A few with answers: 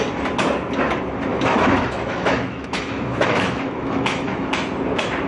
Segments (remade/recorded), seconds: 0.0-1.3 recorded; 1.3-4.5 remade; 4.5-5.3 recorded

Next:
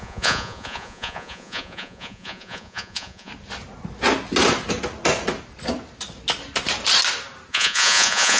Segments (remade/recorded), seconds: 0.0-3.3 remade; 3.3-7.5 recorded; 7.5-8.4 remade